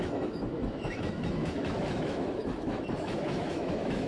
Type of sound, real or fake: fake